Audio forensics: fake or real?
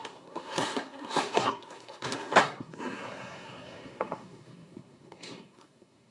fake